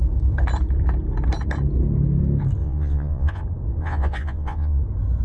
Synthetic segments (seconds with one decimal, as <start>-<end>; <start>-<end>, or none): 2.6-3.4; 3.8-4.8